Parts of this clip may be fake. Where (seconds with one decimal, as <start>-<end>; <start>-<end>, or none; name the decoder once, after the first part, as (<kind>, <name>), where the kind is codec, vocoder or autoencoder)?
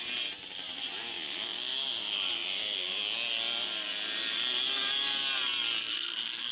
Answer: 5.8-6.5 (codec, SNAC)